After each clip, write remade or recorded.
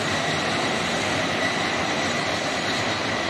remade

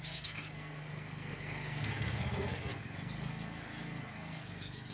remade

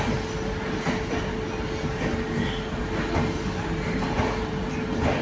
recorded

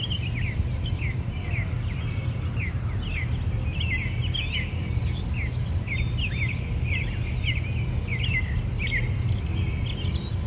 recorded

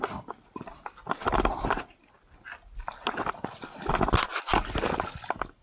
recorded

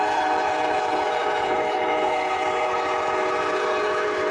remade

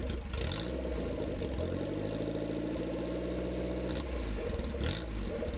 recorded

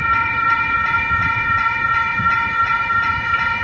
remade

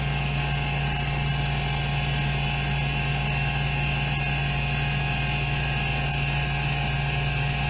recorded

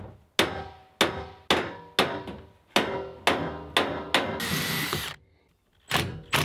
recorded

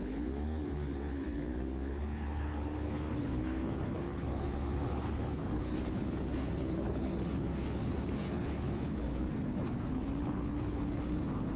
remade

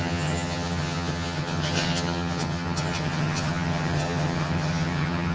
remade